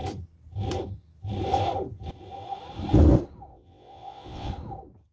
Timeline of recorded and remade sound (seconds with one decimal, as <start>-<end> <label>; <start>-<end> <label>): 0.0-3.5 recorded; 3.5-4.5 remade; 4.5-5.1 recorded